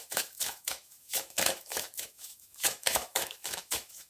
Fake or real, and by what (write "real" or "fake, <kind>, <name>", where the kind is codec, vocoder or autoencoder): fake, autoencoder, DAC-VAE